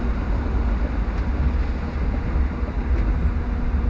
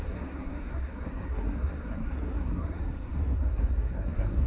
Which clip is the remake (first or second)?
second